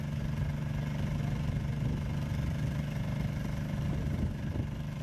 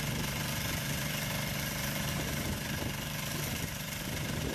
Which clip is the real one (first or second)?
first